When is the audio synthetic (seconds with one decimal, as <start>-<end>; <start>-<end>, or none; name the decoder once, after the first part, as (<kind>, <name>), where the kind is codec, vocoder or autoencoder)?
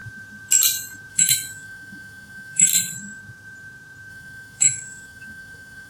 1.1-2.7 (autoencoder, DAC-VAE); 4.1-5.9